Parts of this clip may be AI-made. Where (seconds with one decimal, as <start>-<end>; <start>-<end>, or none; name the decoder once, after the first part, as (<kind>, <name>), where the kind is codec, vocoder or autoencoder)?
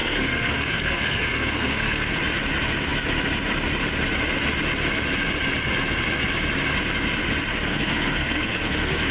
0.0-2.1 (codec, SNAC); 7.5-9.1